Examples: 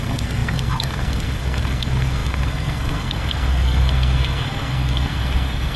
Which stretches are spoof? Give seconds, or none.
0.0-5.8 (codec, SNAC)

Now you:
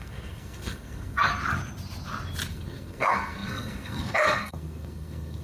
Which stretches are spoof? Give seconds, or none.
0.0-1.3 (codec, SNAC); 2.5-5.4

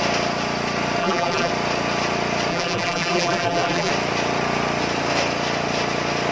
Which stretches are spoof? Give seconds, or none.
1.0-1.5 (vocoder, BigVGAN v2); 2.5-3.9

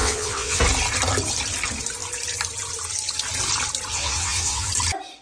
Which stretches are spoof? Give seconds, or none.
0.0-0.6 (vocoder, WaveNeXt); 3.9-4.7